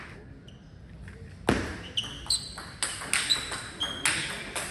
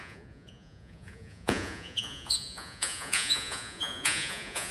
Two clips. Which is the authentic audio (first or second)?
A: first